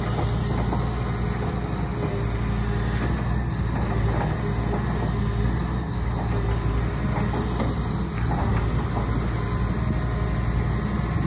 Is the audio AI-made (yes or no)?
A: no